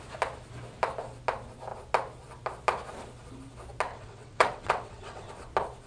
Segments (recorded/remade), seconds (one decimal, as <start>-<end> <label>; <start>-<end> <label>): 0.0-3.9 recorded; 3.9-5.3 remade; 5.3-5.9 recorded